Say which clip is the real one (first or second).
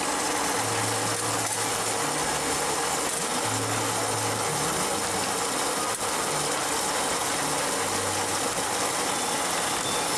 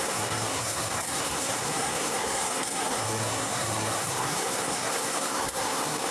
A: first